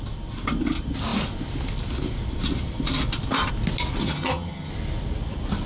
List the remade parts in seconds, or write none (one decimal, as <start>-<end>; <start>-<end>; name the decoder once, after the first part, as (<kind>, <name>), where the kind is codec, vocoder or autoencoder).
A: 4.0-4.7 (vocoder, HiFi-GAN)